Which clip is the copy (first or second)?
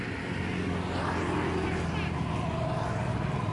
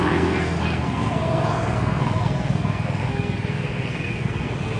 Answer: second